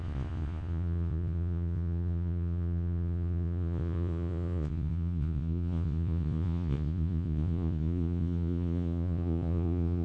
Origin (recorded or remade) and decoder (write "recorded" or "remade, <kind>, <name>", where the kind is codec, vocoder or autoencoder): remade, vocoder, Vocos